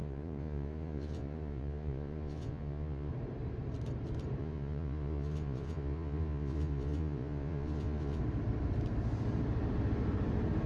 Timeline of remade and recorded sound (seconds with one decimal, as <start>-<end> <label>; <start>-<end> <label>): 0.0-3.1 remade; 3.1-4.4 recorded; 4.4-8.2 remade; 8.2-10.7 recorded

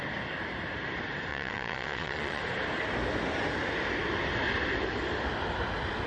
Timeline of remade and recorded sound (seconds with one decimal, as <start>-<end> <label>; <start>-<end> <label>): 0.0-1.3 recorded; 1.3-2.4 remade; 2.4-6.1 recorded

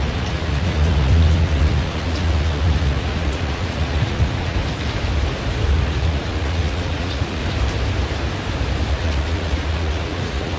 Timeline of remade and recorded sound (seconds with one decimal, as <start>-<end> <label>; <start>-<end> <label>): 0.0-4.6 remade; 4.6-5.7 recorded; 5.7-7.4 remade; 7.4-8.9 recorded; 8.9-10.6 remade